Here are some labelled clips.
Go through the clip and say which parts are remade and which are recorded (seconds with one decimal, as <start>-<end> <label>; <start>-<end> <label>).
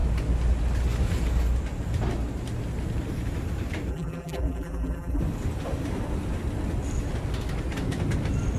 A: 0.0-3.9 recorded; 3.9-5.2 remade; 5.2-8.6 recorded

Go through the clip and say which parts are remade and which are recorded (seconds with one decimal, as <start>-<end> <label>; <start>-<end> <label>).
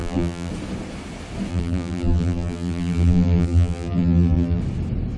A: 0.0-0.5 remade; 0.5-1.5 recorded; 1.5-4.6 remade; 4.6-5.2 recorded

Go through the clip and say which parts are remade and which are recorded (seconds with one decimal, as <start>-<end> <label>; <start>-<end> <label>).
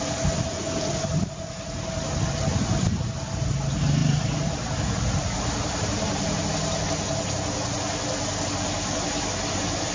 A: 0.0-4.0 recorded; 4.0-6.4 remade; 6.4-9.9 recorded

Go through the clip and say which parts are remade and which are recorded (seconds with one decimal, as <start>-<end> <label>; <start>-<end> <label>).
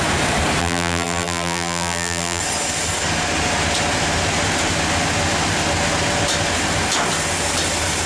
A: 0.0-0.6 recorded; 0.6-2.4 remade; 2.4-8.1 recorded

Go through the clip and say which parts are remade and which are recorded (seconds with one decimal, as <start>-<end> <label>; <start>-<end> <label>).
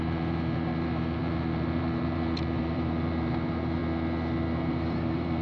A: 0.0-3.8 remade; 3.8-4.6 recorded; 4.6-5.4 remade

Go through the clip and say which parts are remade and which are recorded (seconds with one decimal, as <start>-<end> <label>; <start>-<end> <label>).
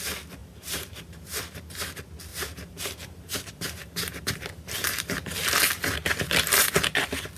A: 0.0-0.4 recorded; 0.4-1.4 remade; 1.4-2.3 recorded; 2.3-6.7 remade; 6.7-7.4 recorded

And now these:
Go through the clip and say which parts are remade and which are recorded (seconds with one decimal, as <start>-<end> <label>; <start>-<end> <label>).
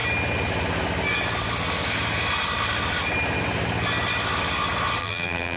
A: 0.0-5.0 recorded; 5.0-5.6 remade